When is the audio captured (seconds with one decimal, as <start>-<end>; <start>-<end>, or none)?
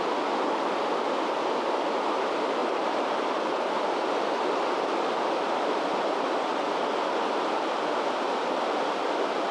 0.0-2.6; 3.2-9.5